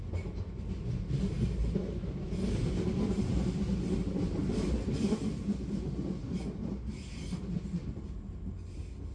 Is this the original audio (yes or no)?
yes